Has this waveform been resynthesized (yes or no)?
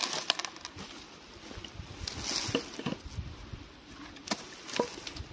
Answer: no